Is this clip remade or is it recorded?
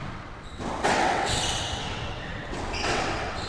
remade